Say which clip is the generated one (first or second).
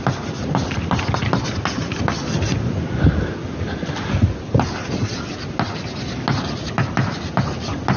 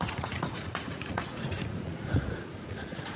second